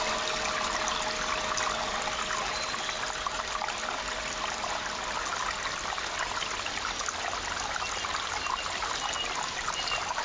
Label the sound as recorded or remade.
recorded